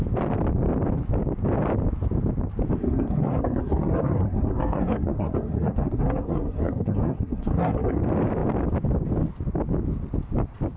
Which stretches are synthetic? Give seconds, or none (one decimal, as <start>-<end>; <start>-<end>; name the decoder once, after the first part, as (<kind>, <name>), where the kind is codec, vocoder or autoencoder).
2.8-8.0 (codec, SNAC)